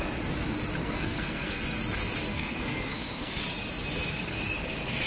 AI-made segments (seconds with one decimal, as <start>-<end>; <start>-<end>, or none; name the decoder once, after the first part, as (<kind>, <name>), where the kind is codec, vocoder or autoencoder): 0.8-1.6 (codec, SNAC); 2.3-3.4